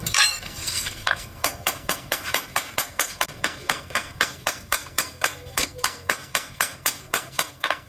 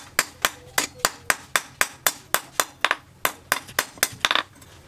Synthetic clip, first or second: first